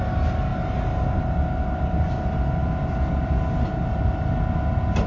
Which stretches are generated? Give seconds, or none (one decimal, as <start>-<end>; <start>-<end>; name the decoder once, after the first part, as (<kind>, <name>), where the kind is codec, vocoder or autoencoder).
none